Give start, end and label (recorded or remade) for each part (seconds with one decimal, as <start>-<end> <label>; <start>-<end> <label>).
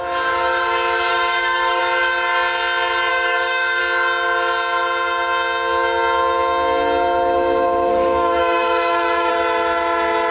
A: 0.0-1.1 recorded; 1.1-1.8 remade; 1.8-3.1 recorded; 3.1-3.8 remade; 3.8-7.9 recorded; 7.9-9.3 remade; 9.3-10.3 recorded